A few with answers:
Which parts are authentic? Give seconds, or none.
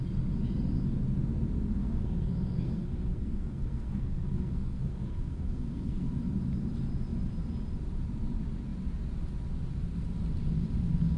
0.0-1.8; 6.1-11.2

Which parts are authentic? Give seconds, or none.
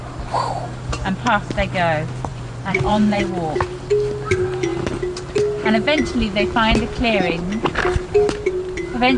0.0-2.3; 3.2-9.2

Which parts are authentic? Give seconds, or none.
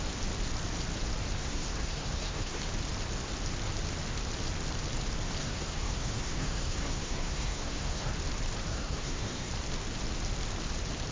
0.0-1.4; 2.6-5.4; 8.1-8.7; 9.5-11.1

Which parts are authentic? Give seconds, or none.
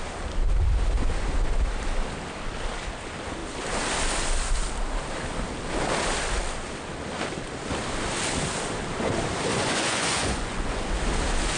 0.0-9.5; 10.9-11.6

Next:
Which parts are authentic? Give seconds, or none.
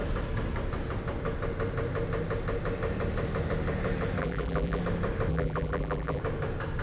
0.0-4.2; 4.8-5.3; 6.2-6.8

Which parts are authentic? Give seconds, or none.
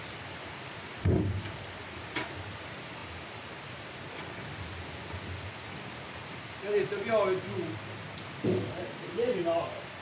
0.0-10.0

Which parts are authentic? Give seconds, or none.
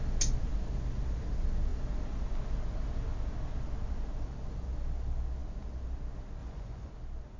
0.0-6.4; 6.9-7.4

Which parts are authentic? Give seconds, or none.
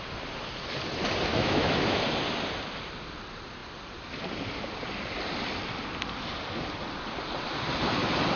0.0-1.3; 2.0-8.4